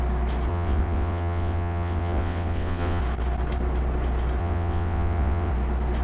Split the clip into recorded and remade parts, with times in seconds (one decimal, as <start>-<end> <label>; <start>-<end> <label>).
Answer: 0.0-0.5 recorded; 0.5-3.0 remade; 3.0-4.4 recorded; 4.4-5.5 remade; 5.5-6.0 recorded